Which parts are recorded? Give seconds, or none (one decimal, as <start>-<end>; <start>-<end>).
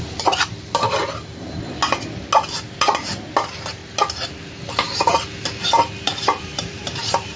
1.8-2.8; 3.8-6.4